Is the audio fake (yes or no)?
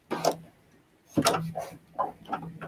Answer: no